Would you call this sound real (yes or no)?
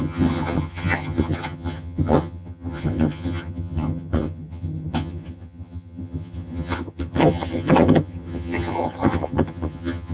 no